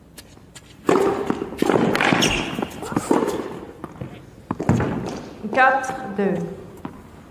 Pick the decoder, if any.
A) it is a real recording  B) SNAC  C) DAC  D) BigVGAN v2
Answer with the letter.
A